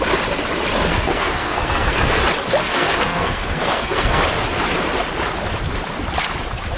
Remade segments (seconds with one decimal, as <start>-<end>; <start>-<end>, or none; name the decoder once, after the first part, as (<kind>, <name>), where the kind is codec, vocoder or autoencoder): 0.9-2.2 (codec, SNAC); 2.6-4.2

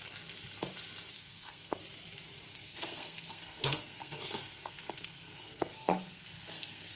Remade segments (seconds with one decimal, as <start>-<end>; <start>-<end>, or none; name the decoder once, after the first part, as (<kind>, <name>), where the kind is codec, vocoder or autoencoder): 1.1-1.8 (codec, SNAC); 2.5-7.0

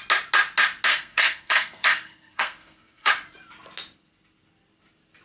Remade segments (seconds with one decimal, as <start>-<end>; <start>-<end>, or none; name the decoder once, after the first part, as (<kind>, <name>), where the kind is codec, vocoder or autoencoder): 0.9-3.1 (codec, SNAC)

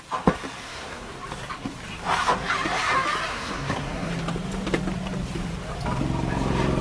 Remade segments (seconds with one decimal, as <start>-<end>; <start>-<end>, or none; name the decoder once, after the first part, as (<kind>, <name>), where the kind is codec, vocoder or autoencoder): 0.6-1.1 (codec, SNAC); 3.3-4.1

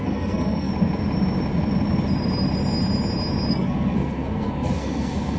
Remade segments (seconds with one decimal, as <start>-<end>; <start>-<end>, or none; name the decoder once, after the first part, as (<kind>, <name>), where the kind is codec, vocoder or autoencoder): 0.0-0.7 (codec, SNAC); 3.5-5.4

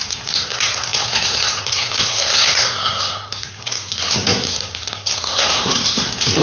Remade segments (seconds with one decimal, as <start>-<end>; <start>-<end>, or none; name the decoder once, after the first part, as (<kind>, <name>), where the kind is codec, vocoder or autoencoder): 0.0-6.4 (codec, SNAC)

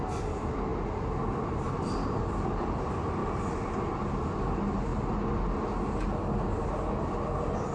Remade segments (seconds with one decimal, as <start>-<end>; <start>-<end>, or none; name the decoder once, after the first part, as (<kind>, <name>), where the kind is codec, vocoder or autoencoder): none